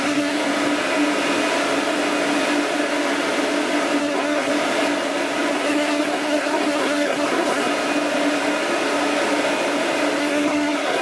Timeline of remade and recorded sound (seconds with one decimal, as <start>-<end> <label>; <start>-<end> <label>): 0.0-0.4 remade; 0.4-4.0 recorded; 4.0-4.5 remade; 4.5-5.5 recorded; 5.5-7.7 remade; 7.7-10.2 recorded; 10.2-11.0 remade